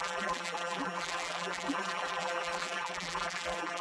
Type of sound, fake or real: fake